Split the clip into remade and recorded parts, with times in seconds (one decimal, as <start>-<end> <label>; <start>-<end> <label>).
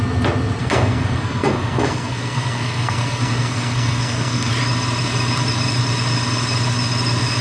0.0-0.6 recorded; 0.6-4.5 remade; 4.5-7.4 recorded